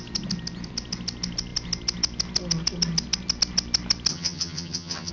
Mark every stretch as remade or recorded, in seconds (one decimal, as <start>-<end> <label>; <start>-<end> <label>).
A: 0.0-4.1 recorded; 4.1-5.1 remade